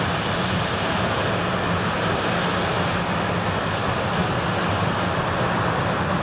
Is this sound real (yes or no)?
yes